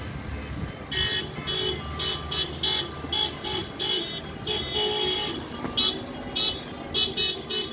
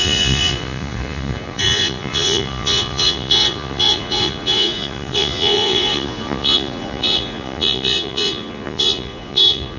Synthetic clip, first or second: second